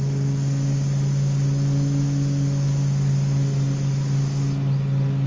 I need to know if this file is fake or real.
real